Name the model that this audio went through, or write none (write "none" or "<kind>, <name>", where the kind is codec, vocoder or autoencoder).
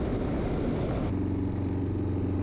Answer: none